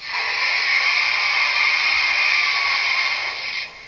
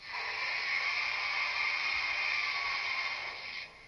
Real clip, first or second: second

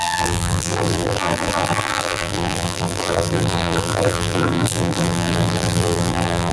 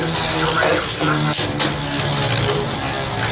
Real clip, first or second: second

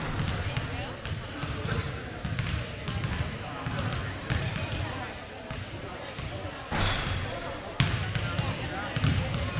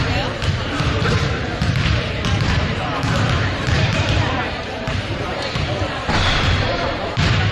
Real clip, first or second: first